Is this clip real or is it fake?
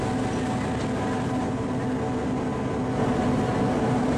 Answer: real